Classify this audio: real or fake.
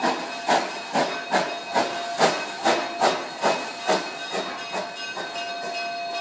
real